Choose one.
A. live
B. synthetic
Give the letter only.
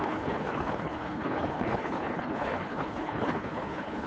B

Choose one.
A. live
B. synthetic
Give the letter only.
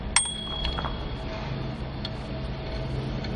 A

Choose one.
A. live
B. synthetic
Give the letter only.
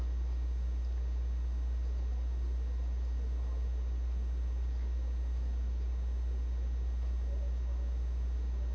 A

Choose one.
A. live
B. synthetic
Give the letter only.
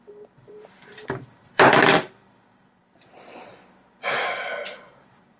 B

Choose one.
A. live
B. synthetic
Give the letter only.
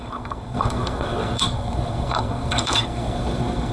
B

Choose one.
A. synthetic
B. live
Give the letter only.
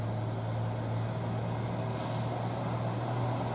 B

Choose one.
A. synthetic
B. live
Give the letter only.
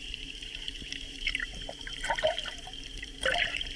A